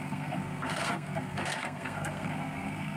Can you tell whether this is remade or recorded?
remade